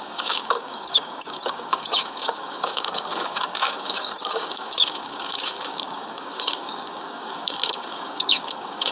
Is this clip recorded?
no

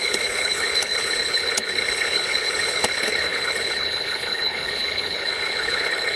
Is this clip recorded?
no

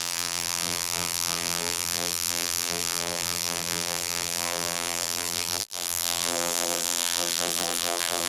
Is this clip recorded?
no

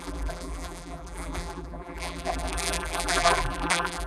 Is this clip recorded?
no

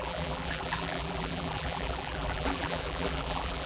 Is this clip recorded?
no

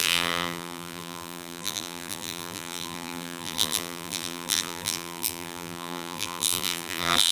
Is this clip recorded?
no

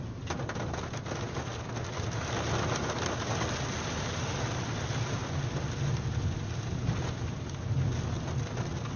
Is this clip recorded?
yes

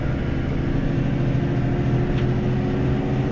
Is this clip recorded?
yes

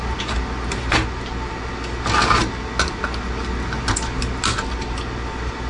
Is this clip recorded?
yes